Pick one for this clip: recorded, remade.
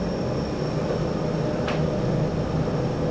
recorded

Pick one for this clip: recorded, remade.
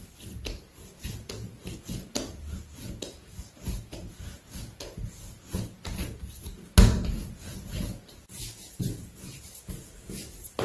recorded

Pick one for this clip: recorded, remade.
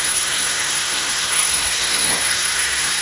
remade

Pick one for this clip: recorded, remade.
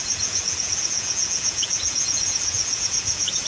remade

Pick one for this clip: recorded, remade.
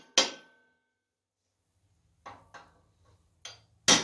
recorded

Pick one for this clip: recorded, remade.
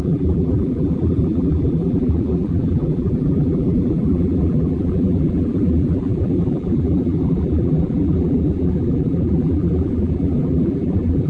remade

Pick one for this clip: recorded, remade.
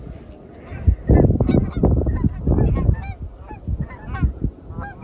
recorded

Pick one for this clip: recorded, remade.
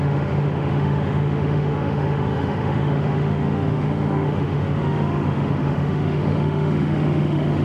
remade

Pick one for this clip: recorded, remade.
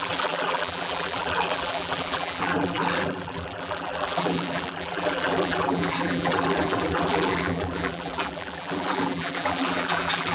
remade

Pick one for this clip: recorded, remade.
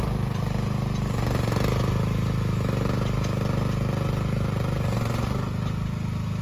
recorded